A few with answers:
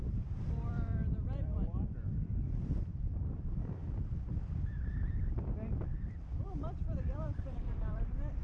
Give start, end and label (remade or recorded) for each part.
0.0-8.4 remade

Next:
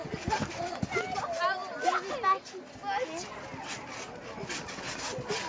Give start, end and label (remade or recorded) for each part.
0.0-5.5 recorded

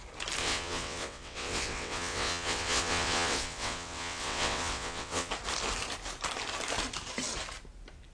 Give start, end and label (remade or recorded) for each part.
0.0-0.4 recorded; 0.4-5.3 remade; 5.3-8.1 recorded